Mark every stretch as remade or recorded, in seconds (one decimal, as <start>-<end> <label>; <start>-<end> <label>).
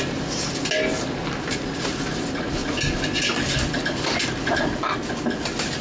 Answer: 0.0-5.8 recorded